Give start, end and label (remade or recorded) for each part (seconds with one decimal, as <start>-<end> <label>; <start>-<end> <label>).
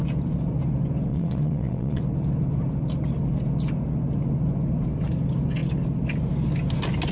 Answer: 0.0-1.1 recorded; 1.1-2.0 remade; 2.0-7.1 recorded